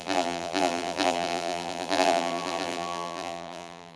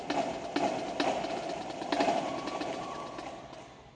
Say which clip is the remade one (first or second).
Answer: first